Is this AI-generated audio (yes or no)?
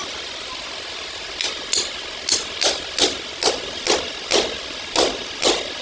no